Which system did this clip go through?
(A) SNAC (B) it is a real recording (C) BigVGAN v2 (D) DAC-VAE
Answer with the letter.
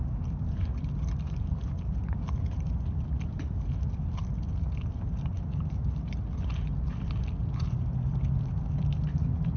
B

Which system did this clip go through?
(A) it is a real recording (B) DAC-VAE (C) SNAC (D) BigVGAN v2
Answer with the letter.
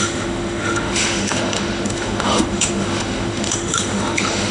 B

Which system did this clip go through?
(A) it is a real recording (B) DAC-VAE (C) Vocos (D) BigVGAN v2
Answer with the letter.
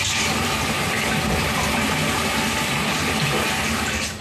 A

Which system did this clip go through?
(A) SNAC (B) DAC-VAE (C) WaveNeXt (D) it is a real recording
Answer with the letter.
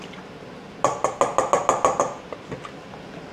D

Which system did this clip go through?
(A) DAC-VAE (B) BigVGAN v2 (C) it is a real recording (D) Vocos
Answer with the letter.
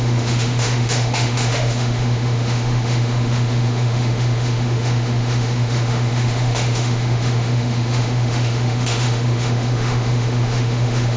A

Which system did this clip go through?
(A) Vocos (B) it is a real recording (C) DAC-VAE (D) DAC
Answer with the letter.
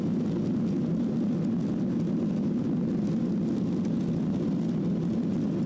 B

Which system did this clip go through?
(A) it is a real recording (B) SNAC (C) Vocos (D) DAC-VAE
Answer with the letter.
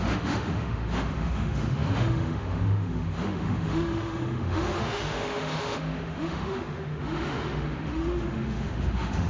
D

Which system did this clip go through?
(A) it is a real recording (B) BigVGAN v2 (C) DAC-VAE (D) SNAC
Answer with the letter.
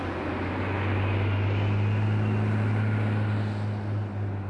A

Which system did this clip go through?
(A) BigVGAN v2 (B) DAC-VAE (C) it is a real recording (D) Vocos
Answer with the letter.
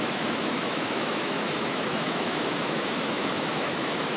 B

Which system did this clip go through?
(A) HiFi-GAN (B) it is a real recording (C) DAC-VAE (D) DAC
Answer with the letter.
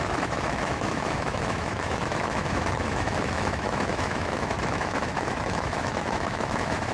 C